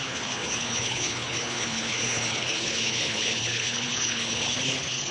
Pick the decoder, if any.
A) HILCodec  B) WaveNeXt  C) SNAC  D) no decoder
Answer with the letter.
A